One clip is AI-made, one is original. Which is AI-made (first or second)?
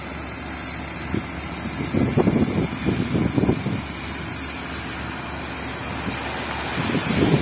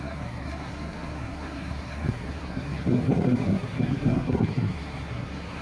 second